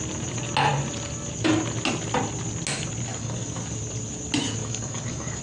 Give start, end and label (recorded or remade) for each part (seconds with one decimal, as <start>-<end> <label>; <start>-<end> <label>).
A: 0.0-3.1 recorded; 3.1-3.6 remade; 3.6-4.6 recorded; 4.6-5.4 remade